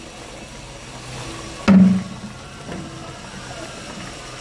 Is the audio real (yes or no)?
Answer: yes